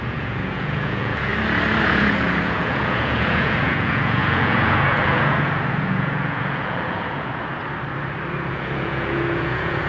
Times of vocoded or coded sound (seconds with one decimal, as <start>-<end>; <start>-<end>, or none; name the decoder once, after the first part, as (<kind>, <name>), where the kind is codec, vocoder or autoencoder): 0.0-1.3 (vocoder, Vocos); 1.8-7.5; 8.5-9.9

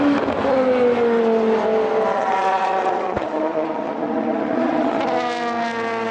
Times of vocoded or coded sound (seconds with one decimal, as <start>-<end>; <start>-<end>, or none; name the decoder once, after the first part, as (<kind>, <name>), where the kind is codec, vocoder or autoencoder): 2.1-5.0 (vocoder, Vocos)

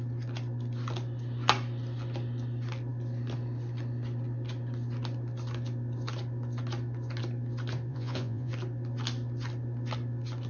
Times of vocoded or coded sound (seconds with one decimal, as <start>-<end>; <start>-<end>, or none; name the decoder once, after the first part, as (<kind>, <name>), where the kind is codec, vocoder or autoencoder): 7.9-8.5 (vocoder, Vocos)